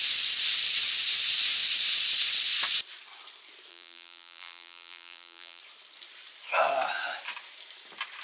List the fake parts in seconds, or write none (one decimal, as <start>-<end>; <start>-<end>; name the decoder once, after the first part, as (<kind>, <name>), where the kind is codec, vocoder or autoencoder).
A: 3.7-5.6 (vocoder, BigVGAN v2)